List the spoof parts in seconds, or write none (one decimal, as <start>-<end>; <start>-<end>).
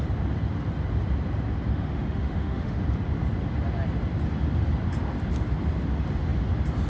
1.7-2.8